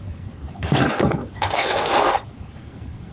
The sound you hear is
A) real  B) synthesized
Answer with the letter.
B